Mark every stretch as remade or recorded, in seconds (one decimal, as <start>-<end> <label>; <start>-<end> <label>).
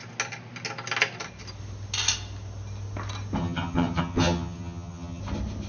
0.0-3.4 recorded; 3.4-5.2 remade; 5.2-5.7 recorded